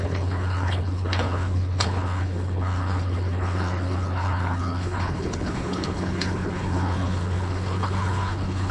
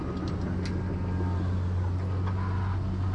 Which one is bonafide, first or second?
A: second